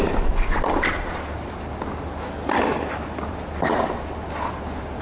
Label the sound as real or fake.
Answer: real